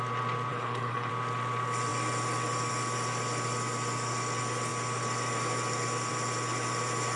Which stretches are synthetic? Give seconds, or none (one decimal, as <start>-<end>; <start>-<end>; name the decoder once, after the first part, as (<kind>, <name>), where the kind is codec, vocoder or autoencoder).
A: 0.5-1.1 (codec, HILCodec)